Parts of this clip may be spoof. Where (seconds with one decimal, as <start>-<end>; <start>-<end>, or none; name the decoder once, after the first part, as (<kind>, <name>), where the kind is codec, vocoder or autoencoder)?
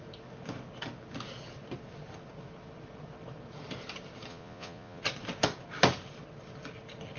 4.3-5.0 (vocoder, Vocos)